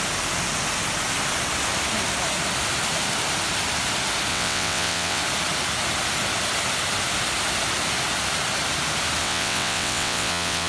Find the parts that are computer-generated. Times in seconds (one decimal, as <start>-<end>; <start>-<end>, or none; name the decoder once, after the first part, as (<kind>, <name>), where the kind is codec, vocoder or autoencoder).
4.3-5.2 (vocoder, WaveNeXt); 9.2-10.7